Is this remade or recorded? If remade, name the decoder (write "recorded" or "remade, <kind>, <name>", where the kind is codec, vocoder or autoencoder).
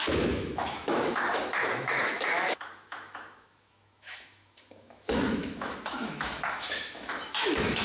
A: remade, autoencoder, DAC-VAE